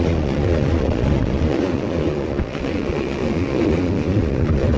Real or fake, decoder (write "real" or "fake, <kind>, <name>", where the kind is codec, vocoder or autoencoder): fake, vocoder, Vocos